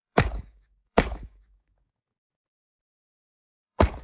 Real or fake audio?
fake